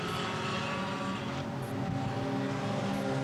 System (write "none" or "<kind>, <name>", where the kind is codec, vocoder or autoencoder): none